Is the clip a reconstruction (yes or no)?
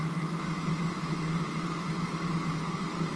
yes